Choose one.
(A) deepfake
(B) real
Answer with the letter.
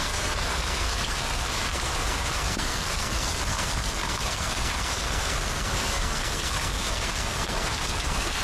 A